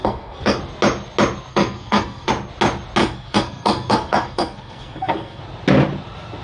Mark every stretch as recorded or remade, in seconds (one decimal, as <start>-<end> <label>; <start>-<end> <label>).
0.0-0.6 remade; 0.6-1.5 recorded; 1.5-2.3 remade; 2.3-3.0 recorded; 3.0-5.4 remade; 5.4-6.4 recorded